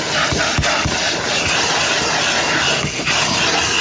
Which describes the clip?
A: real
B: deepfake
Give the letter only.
A